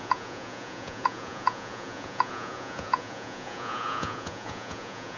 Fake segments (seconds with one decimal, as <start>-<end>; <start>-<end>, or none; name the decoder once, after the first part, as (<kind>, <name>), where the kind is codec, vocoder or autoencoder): 0.0-5.2 (vocoder, Vocos)